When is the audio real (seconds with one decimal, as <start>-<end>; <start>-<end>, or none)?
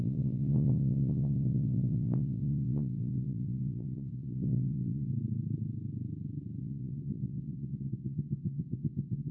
5.1-6.6